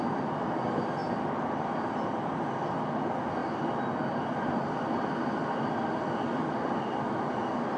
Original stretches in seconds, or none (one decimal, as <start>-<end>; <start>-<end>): 0.0-7.8